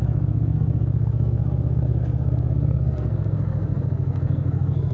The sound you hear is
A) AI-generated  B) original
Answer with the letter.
A